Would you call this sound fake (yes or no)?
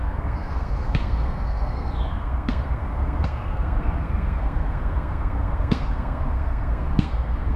yes